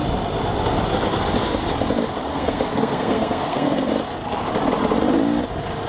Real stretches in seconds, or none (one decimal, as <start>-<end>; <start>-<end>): 0.0-2.3; 3.9-5.9